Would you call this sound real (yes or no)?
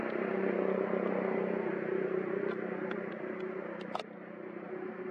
yes